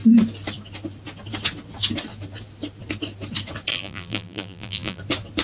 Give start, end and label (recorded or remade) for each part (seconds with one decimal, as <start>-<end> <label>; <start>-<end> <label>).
0.0-3.7 recorded; 3.7-5.0 remade; 5.0-5.4 recorded